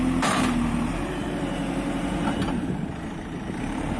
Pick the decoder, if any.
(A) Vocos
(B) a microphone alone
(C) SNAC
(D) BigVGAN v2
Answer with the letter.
D